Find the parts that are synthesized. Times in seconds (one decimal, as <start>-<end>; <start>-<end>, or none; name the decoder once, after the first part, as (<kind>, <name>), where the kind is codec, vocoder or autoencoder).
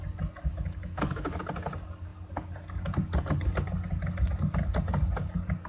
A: 0.5-1.4 (autoencoder, DAC-VAE)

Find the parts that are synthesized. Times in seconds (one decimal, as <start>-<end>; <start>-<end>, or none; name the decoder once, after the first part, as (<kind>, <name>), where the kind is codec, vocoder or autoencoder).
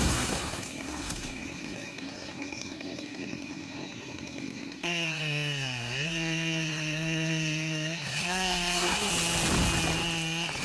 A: 0.0-9.1 (codec, SNAC)